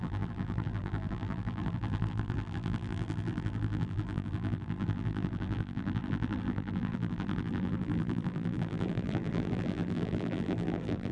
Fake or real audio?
fake